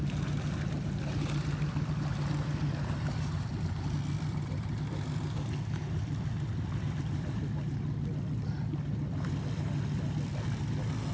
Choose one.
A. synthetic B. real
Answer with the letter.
B